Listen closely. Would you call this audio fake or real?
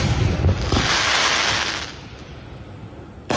real